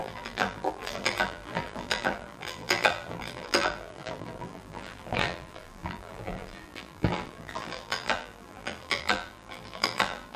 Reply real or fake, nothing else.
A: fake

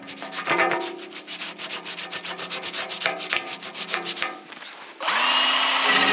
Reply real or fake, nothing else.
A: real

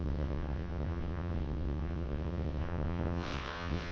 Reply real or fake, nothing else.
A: fake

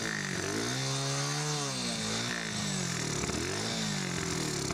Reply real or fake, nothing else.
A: real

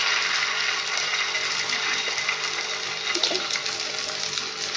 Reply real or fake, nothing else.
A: real